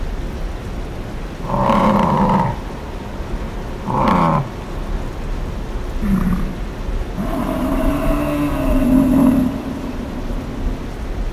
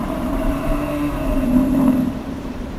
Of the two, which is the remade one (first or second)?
second